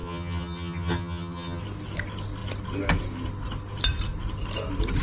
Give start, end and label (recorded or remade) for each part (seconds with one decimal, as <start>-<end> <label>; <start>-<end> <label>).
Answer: 0.0-1.6 remade; 1.6-5.0 recorded